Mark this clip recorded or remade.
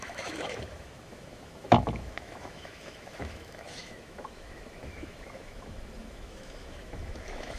remade